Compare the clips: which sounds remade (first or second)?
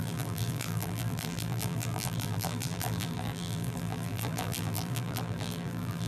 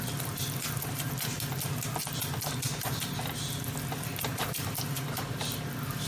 first